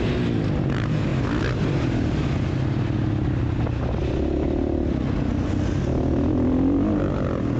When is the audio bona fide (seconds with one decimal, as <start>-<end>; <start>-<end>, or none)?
0.0-7.6